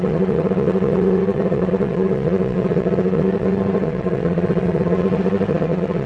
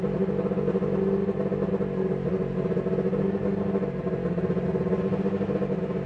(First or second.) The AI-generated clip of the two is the first